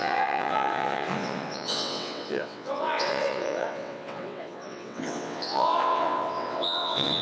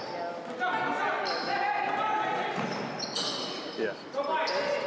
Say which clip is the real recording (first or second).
second